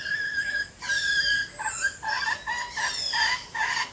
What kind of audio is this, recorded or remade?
recorded